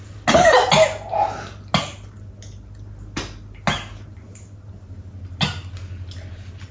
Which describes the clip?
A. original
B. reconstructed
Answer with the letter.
A